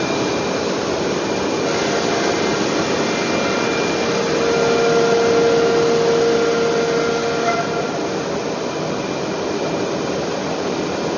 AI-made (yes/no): no